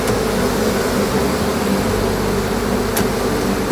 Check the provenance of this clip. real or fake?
real